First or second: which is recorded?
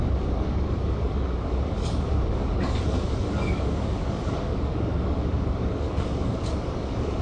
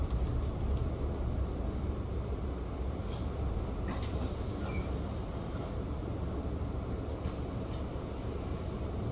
second